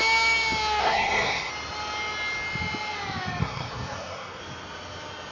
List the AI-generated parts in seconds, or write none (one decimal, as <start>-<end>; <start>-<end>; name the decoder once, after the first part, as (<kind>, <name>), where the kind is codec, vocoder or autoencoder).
0.8-1.5 (codec, SNAC); 3.4-4.4